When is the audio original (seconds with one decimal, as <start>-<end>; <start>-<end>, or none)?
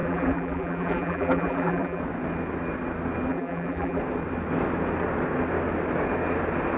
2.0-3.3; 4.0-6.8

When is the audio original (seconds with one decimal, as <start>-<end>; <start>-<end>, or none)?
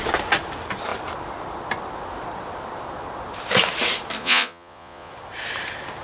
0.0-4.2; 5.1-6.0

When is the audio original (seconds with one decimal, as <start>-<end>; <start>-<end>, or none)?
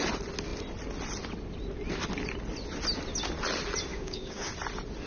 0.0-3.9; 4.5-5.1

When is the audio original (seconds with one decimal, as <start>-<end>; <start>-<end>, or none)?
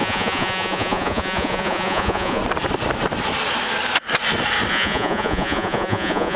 2.4-4.7